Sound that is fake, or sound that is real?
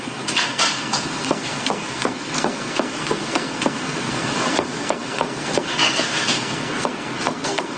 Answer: fake